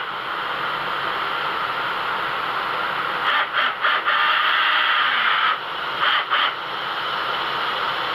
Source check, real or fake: real